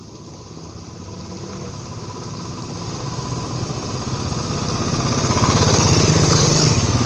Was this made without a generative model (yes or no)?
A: yes